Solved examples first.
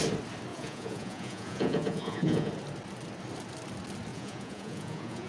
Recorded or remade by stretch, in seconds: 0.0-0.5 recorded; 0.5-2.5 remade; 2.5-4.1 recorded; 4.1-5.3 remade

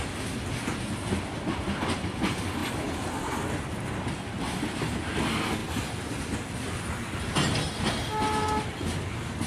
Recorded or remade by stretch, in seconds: 0.0-9.5 recorded

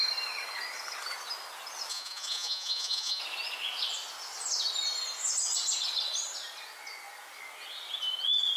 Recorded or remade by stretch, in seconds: 0.0-1.9 recorded; 1.9-3.2 remade; 3.2-8.6 recorded

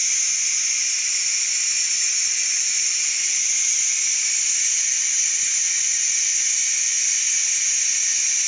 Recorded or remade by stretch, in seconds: 0.0-8.5 recorded

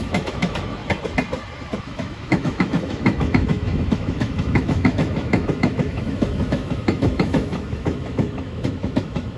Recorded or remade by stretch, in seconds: 0.0-0.8 remade; 0.8-1.8 recorded; 1.8-9.4 remade

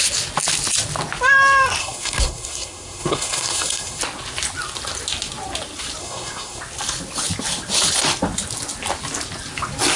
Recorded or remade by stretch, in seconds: 0.0-1.8 recorded; 1.8-4.0 remade; 4.0-6.0 recorded; 6.0-6.6 remade; 6.6-10.0 recorded

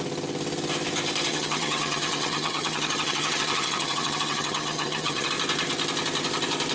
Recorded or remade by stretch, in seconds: 0.0-1.3 recorded; 1.3-5.3 remade; 5.3-6.7 recorded